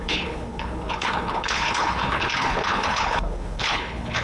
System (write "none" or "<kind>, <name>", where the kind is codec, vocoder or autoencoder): codec, HILCodec